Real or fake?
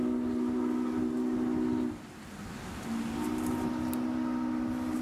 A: real